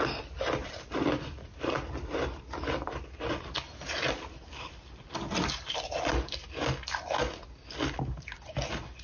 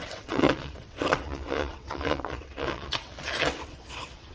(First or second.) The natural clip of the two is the first